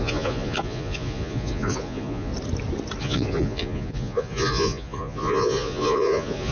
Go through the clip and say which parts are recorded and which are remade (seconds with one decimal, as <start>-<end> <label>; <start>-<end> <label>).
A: 0.0-2.3 remade; 2.3-3.0 recorded; 3.0-6.5 remade